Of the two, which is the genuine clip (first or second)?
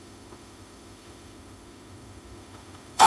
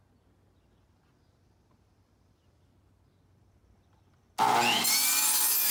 second